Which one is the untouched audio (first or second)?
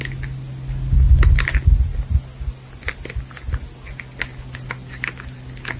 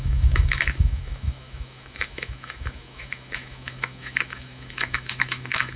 first